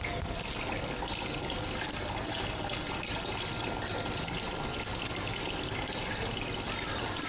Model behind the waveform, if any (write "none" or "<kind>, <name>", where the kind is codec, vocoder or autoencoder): none